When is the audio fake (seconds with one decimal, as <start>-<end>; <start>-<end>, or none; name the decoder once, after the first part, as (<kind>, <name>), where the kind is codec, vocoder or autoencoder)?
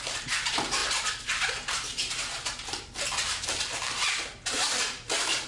0.0-5.5 (vocoder, BigVGAN v2)